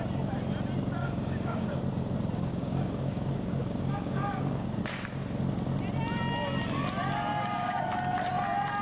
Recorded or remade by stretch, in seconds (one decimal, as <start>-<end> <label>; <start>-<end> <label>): 0.0-1.0 recorded; 1.0-1.8 remade; 1.8-2.5 recorded; 2.5-4.8 remade; 4.8-7.3 recorded; 7.3-7.8 remade; 7.8-8.8 recorded